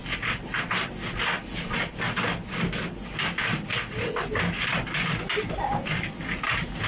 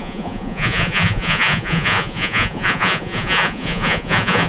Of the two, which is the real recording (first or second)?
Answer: first